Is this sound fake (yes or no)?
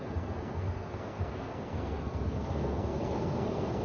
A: yes